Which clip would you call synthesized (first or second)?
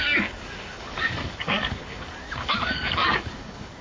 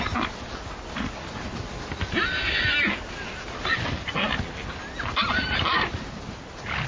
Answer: first